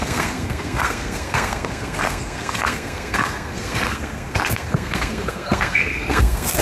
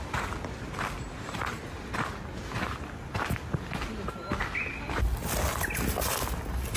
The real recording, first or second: second